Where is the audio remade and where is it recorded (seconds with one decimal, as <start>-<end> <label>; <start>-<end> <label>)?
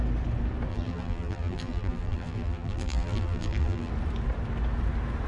0.0-0.7 recorded; 0.7-3.9 remade; 3.9-5.3 recorded